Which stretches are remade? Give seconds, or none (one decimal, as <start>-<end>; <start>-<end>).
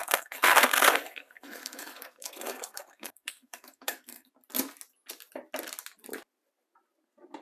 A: 0.0-4.3